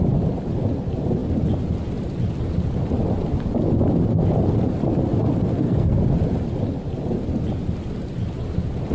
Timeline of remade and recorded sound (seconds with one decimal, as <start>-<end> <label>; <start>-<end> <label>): 0.0-5.5 recorded; 5.5-6.0 remade; 6.0-8.9 recorded